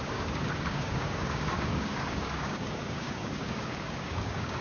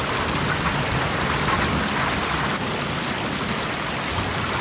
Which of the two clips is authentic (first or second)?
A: second